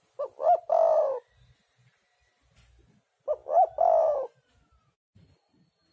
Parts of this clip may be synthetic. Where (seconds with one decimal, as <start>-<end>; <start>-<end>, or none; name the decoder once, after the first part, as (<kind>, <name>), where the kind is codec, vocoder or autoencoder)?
none